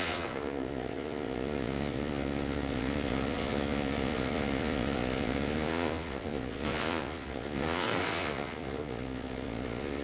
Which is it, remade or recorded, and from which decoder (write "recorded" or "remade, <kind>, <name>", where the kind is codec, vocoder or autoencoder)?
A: remade, vocoder, Vocos